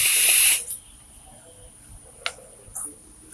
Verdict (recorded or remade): recorded